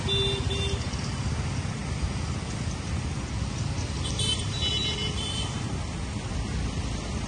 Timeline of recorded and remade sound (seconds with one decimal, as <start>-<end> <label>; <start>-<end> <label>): 0.0-7.3 recorded